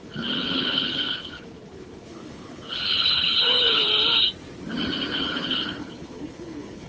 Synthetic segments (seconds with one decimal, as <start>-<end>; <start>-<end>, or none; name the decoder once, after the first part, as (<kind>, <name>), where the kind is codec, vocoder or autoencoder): 0.0-3.9 (codec, HILCodec); 5.1-6.9